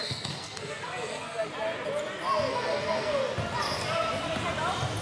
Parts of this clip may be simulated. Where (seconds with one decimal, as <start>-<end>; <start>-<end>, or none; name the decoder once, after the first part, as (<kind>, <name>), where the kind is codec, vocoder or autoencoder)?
0.0-1.4 (codec, SNAC); 2.5-3.2